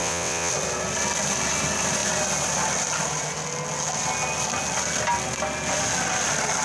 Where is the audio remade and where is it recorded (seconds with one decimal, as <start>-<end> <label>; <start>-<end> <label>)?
0.0-0.5 remade; 0.5-6.6 recorded